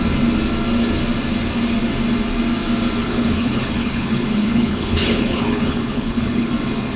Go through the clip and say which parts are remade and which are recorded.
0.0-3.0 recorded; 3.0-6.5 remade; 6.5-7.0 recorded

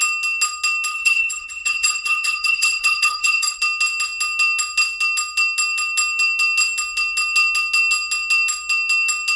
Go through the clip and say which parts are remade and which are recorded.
0.0-0.9 recorded; 0.9-3.6 remade; 3.6-9.4 recorded

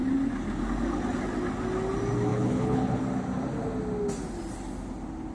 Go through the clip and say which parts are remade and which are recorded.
0.0-2.3 recorded; 2.3-3.0 remade; 3.0-5.3 recorded